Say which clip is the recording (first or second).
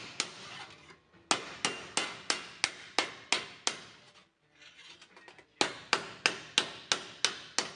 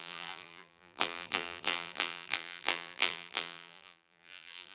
first